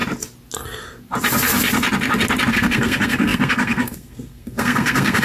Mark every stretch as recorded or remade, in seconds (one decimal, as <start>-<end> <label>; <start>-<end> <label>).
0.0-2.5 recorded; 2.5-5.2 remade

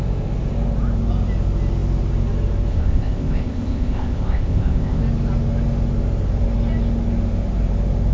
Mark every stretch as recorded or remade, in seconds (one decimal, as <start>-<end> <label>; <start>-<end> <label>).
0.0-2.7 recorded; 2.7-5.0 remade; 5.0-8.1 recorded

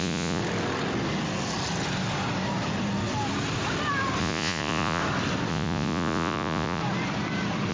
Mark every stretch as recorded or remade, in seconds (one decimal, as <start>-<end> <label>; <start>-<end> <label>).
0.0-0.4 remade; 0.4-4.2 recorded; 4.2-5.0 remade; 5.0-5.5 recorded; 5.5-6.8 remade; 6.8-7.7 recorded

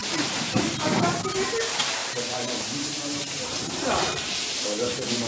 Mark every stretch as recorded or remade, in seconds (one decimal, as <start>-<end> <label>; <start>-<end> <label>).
0.0-0.7 remade; 0.7-2.0 recorded; 2.0-5.3 remade

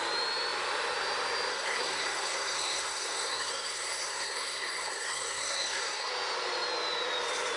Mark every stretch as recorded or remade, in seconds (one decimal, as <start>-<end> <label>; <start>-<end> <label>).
0.0-1.5 recorded; 1.5-6.1 remade; 6.1-7.6 recorded